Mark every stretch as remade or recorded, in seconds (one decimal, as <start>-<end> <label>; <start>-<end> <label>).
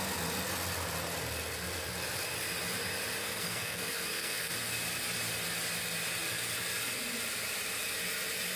0.0-3.2 recorded; 3.2-4.5 remade; 4.5-8.6 recorded